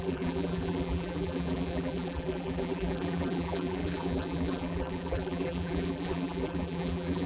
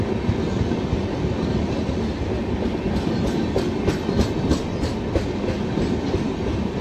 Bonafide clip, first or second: second